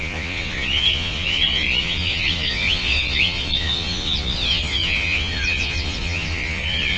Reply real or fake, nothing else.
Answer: fake